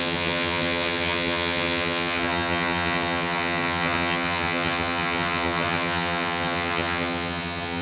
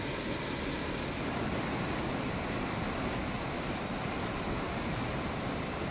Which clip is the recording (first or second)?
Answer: second